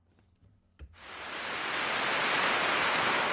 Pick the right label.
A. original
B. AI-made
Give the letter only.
A